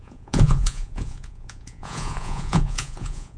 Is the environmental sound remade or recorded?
remade